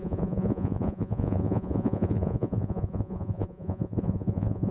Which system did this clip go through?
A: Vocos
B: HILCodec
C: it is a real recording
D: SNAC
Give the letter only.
A